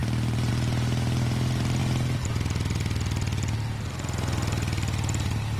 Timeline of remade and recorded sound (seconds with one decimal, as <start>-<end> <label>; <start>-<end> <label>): 0.0-1.8 remade; 1.8-5.6 recorded